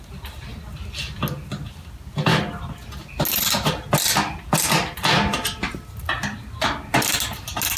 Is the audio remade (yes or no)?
no